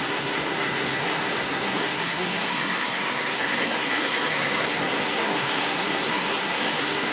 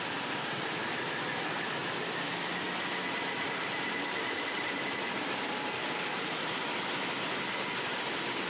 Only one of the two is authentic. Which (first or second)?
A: second